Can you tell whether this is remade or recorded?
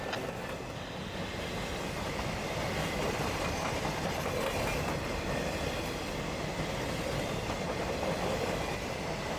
recorded